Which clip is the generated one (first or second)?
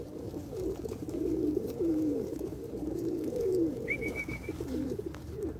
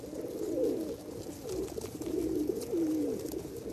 first